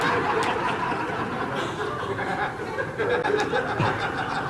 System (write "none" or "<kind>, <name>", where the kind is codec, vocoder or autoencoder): none